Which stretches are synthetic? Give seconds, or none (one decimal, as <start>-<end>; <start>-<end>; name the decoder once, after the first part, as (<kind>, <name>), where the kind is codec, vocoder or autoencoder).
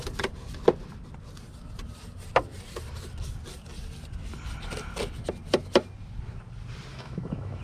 6.9-7.6 (autoencoder, DAC-VAE)